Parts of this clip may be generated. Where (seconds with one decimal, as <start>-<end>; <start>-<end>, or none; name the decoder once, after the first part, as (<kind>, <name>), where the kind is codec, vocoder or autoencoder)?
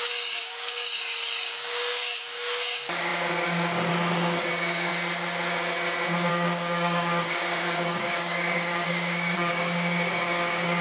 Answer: 0.0-4.9 (codec, DAC); 6.3-10.8